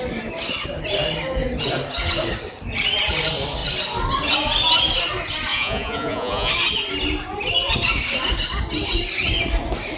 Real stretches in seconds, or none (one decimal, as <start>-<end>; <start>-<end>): 0.0-5.5; 6.5-10.0